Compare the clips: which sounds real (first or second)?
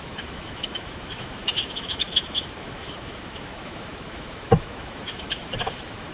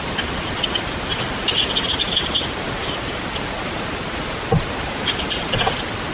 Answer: second